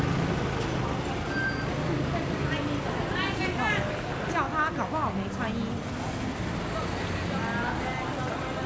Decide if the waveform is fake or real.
real